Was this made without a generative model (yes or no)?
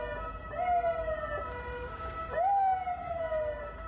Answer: yes